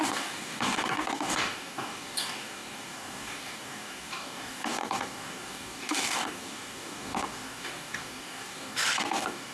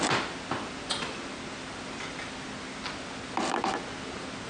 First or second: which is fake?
first